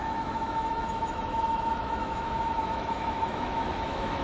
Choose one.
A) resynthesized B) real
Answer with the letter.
A